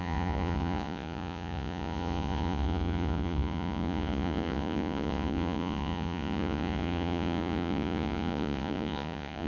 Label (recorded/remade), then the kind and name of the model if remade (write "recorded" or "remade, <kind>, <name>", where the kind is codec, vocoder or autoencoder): remade, vocoder, Vocos